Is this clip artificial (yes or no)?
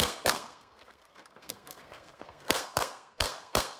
yes